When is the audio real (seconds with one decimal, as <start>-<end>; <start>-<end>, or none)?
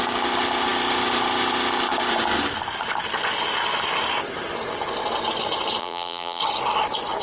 0.0-5.8; 6.4-7.2